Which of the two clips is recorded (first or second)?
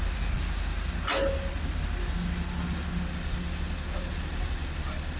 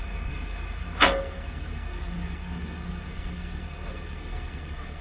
first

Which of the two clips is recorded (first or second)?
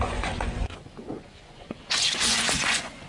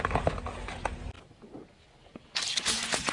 second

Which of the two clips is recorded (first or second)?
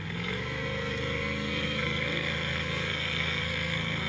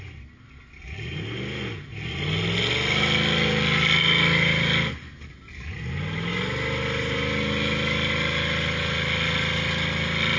second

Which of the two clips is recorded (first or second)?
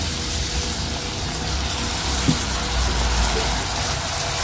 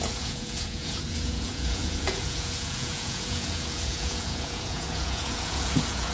first